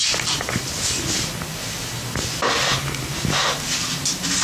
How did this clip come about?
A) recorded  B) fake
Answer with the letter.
A